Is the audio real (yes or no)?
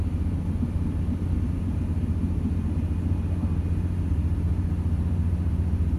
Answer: yes